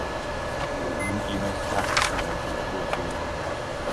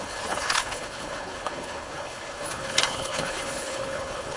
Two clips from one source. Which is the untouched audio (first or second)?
first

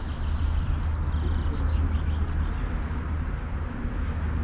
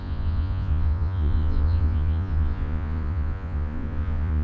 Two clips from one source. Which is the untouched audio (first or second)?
first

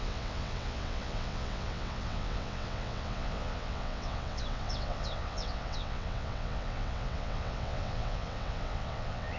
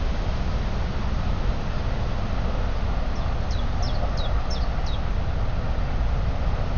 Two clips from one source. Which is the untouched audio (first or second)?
second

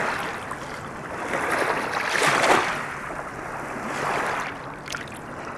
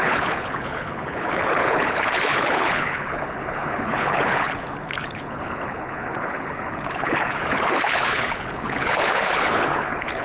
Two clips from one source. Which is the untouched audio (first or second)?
first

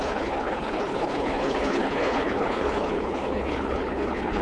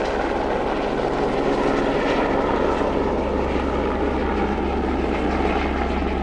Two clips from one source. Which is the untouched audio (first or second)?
second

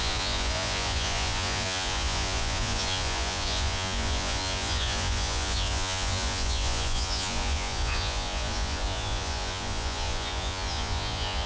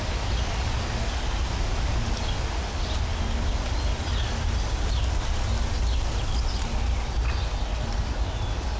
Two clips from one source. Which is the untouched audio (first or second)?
second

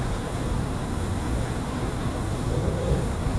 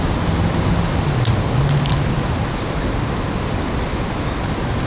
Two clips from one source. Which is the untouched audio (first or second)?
second